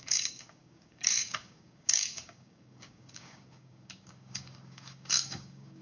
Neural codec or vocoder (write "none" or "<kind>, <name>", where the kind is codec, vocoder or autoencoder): codec, DAC